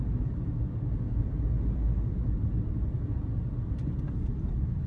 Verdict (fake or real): real